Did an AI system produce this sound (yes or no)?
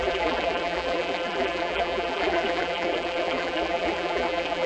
yes